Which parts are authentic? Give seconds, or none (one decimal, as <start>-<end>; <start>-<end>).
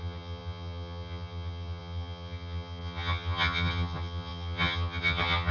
none